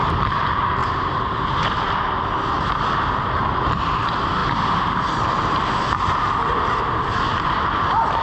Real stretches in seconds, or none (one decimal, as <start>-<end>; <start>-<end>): 0.0-0.8; 3.8-8.2